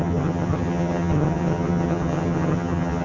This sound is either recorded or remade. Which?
remade